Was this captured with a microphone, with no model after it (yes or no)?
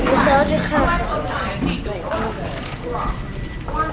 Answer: yes